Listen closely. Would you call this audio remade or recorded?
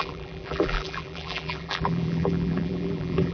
remade